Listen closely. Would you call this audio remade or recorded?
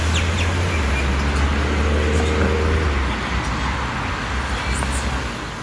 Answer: recorded